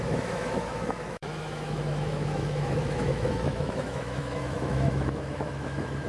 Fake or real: fake